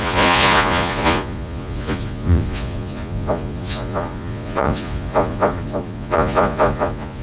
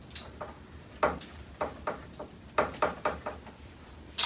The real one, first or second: second